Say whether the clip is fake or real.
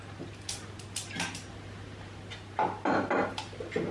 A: real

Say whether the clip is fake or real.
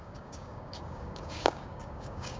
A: fake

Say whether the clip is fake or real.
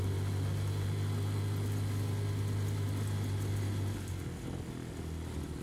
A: real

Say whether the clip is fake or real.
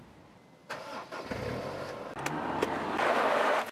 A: real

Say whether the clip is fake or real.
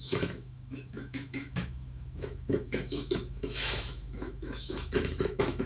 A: fake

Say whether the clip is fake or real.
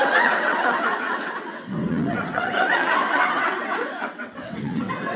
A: fake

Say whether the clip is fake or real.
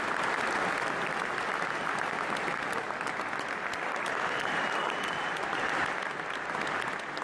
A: real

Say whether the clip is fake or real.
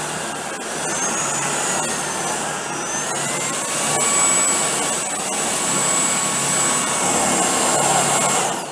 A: real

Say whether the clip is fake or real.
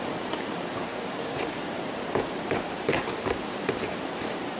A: fake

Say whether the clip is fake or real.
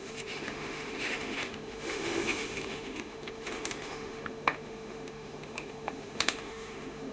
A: fake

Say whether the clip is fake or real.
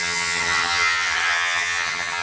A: fake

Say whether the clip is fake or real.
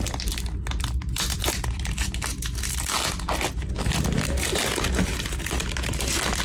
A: real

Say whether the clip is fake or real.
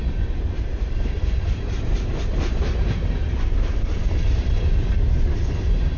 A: fake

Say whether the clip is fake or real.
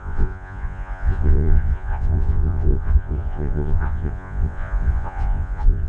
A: fake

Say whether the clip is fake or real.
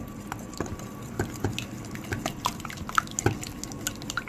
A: real